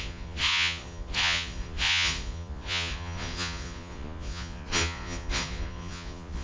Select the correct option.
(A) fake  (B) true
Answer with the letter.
A